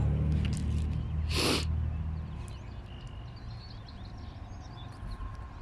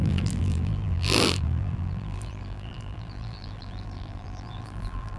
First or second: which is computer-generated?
second